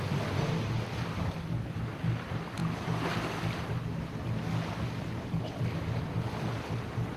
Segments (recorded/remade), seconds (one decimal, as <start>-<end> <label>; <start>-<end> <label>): 0.0-7.2 recorded